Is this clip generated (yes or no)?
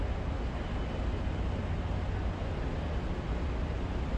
no